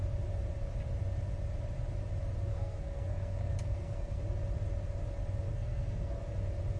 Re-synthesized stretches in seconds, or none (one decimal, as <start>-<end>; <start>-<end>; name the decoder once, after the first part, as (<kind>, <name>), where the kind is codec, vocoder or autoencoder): 2.5-4.2 (codec, SNAC); 5.5-6.2